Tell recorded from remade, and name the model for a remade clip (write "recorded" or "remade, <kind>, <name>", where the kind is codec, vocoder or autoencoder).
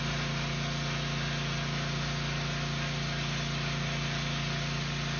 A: recorded